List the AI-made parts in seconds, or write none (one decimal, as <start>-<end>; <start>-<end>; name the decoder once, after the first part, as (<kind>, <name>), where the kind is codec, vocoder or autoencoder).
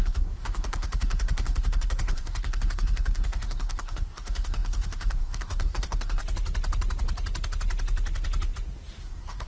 0.0-6.2 (codec, SNAC); 9.0-9.5